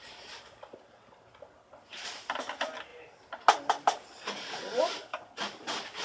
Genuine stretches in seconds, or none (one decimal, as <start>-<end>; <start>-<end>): 0.0-6.0